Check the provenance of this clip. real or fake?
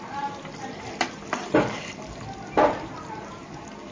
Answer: real